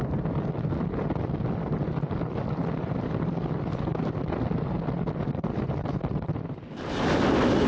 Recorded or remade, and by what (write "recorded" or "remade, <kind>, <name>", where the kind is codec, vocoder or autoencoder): recorded